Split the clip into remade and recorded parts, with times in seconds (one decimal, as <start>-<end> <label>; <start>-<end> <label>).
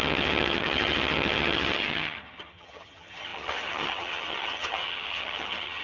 0.0-5.8 remade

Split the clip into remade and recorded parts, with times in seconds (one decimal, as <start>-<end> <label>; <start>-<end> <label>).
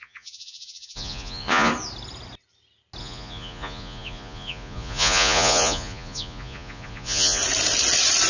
0.0-1.7 remade; 1.7-3.0 recorded; 3.0-7.4 remade; 7.4-8.3 recorded